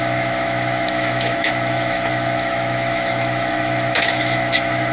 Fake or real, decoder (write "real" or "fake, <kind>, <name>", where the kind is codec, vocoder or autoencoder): fake, autoencoder, DAC-VAE